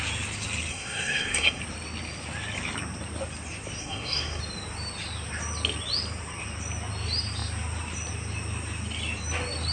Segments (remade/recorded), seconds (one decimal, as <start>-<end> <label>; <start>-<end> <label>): 0.0-0.7 recorded; 0.7-1.6 remade; 1.6-3.8 recorded; 3.8-4.4 remade; 4.4-9.7 recorded